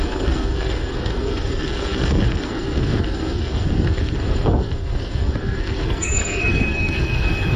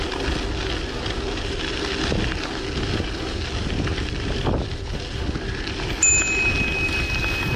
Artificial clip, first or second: first